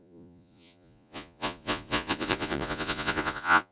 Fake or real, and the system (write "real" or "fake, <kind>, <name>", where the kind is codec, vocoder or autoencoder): fake, vocoder, Vocos